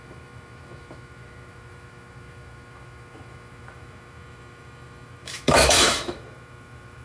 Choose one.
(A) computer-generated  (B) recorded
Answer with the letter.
A